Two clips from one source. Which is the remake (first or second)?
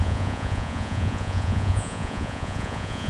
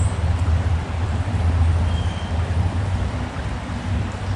first